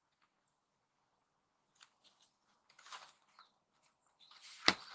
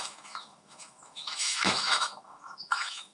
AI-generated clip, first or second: second